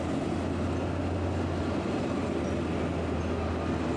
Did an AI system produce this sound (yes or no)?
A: no